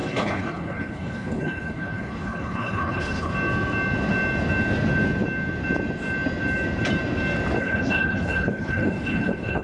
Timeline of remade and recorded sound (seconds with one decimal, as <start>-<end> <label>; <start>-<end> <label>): 0.0-3.3 remade; 3.3-7.6 recorded; 7.6-9.6 remade